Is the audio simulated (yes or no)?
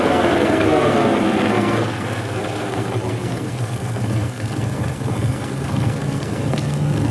yes